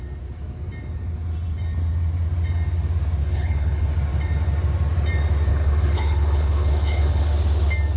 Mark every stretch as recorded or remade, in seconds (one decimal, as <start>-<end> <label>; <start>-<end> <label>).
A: 0.0-3.2 recorded; 3.2-3.9 remade; 3.9-5.5 recorded; 5.5-7.3 remade; 7.3-8.0 recorded

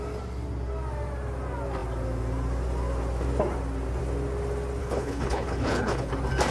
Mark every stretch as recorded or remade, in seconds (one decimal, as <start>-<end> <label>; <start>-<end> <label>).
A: 0.0-4.8 recorded; 4.8-6.1 remade; 6.1-6.5 recorded

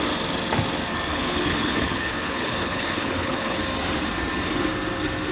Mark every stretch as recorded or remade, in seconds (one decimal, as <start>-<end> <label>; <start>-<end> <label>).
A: 0.0-1.1 recorded; 1.1-3.6 remade; 3.6-5.3 recorded

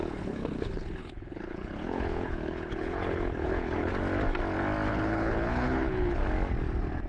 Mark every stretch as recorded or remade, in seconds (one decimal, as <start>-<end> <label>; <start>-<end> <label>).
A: 0.0-3.9 remade; 3.9-4.9 recorded; 4.9-6.2 remade; 6.2-7.1 recorded